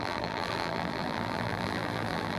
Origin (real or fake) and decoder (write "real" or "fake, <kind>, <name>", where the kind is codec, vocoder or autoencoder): fake, vocoder, BigVGAN v2